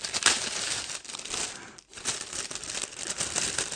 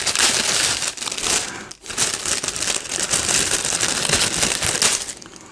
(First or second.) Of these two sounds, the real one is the second